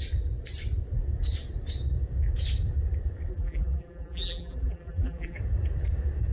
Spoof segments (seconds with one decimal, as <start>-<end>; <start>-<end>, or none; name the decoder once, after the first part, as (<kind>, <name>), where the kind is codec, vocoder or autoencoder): 3.3-5.4 (vocoder, BigVGAN v2)